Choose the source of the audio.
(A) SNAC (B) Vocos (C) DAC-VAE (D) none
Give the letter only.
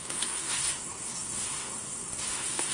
A